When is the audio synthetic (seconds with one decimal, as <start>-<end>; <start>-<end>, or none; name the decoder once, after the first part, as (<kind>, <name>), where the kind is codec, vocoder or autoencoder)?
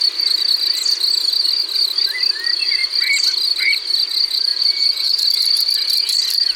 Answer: 4.5-5.1 (vocoder, Vocos)